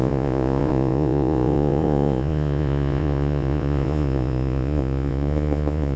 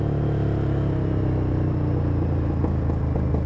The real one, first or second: second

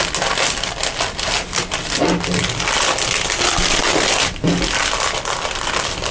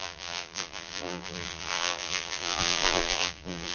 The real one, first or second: first